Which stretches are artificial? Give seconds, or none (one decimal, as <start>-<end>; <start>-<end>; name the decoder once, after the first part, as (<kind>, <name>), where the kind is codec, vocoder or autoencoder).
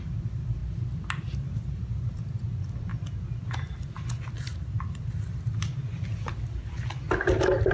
0.0-0.6 (vocoder, BigVGAN v2); 1.7-2.9